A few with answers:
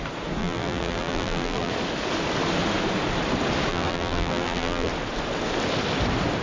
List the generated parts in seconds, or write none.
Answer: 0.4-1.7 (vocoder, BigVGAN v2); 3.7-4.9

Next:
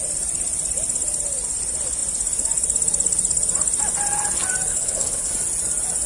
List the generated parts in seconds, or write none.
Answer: 4.7-5.3 (codec, HILCodec)

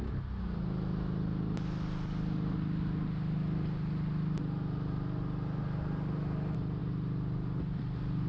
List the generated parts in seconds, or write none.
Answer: none